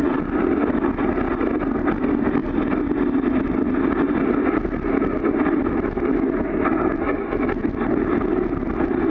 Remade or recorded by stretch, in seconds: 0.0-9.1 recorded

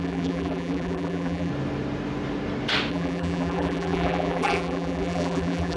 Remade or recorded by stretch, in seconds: 0.0-1.5 remade; 1.5-2.9 recorded; 2.9-5.8 remade

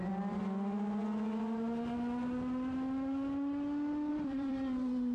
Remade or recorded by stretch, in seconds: 0.0-1.0 remade; 1.0-4.1 recorded; 4.1-5.1 remade

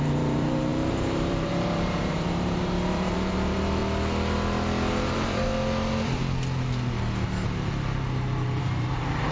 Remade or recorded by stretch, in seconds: 0.0-3.8 remade; 3.8-4.9 recorded; 4.9-5.5 remade; 5.5-8.6 recorded; 8.6-9.3 remade

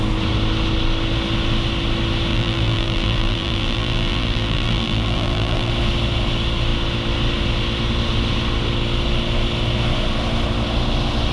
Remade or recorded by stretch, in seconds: 0.0-2.3 recorded; 2.3-5.7 remade; 5.7-11.3 recorded

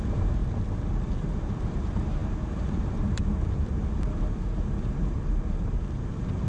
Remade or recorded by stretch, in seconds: 0.0-0.4 remade; 0.4-1.1 recorded; 1.1-6.5 remade